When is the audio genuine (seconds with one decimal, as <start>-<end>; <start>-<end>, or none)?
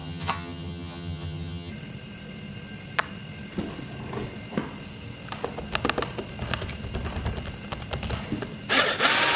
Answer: 1.7-9.4